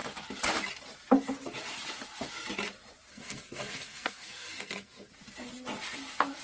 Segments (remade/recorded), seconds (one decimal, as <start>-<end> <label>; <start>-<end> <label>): 0.0-3.1 recorded; 3.1-5.1 remade; 5.1-6.4 recorded